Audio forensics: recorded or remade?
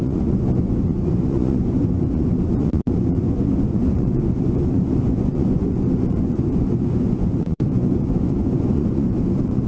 remade